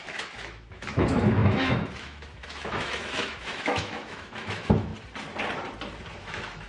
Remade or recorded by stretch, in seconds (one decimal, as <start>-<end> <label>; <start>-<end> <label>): 0.0-4.9 remade; 4.9-6.2 recorded; 6.2-6.7 remade